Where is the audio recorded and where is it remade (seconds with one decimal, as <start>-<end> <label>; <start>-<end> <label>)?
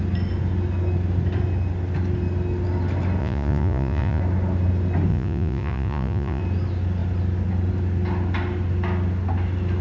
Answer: 0.0-3.2 recorded; 3.2-4.2 remade; 4.2-5.1 recorded; 5.1-6.4 remade; 6.4-9.8 recorded